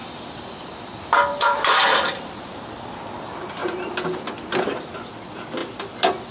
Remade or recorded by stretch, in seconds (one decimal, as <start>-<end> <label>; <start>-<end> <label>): 0.0-1.3 recorded; 1.3-2.6 remade; 2.6-6.3 recorded